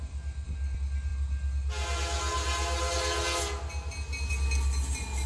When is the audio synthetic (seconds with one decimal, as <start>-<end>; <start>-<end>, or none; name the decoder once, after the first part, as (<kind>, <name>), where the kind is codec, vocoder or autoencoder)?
none